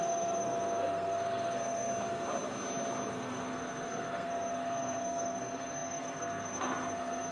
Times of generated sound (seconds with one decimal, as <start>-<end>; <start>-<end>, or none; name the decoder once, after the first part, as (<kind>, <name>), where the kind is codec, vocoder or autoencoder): 0.0-1.9 (codec, SNAC); 3.1-7.3